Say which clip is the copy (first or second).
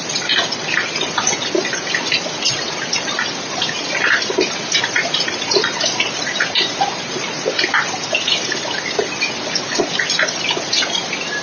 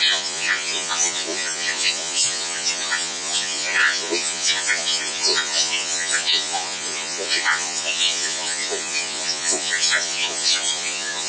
second